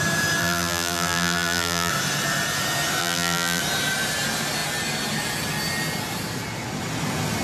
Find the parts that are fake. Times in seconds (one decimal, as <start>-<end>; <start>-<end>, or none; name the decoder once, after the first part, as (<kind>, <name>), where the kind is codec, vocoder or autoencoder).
0.4-1.9 (vocoder, BigVGAN v2); 3.0-3.6